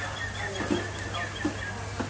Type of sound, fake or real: real